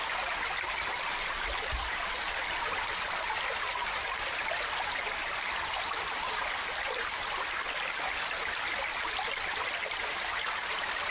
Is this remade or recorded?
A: recorded